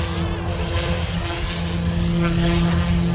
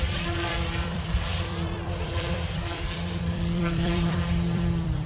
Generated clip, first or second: second